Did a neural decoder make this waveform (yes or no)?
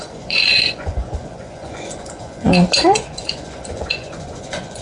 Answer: yes